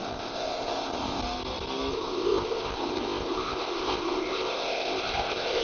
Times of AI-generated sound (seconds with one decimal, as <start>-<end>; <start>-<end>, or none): 0.0-1.2; 1.9-5.6